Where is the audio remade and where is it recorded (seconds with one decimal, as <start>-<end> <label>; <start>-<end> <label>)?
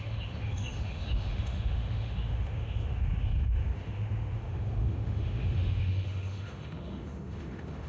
0.0-7.9 remade